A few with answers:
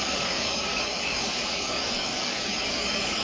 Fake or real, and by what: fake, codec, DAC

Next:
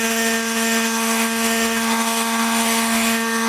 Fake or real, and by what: fake, autoencoder, DAC-VAE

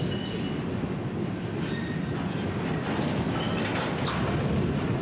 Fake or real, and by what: real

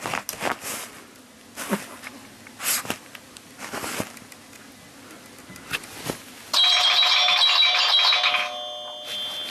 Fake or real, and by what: real